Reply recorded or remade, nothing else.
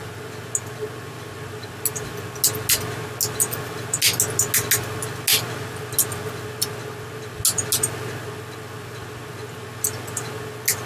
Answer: recorded